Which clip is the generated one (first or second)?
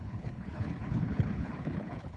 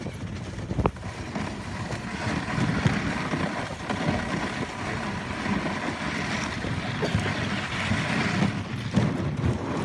first